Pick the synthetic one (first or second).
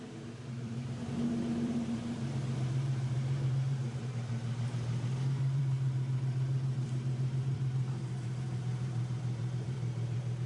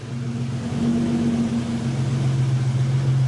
first